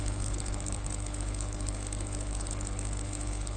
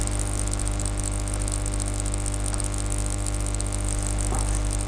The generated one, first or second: first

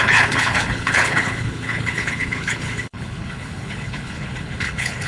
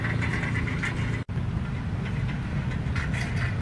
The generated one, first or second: first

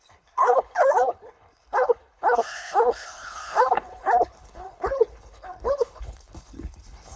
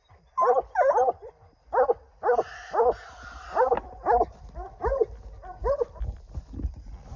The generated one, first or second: first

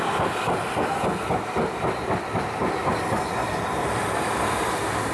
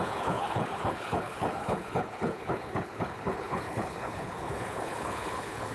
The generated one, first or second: second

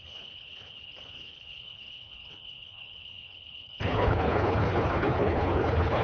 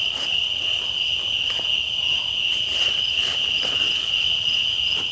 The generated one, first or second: first